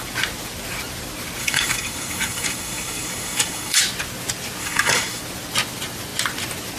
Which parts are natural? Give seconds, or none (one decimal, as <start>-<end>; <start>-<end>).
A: 0.0-1.4; 3.8-4.6; 5.2-6.8